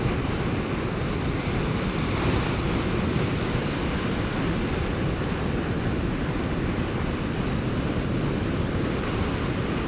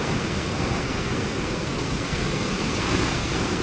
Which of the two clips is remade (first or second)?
second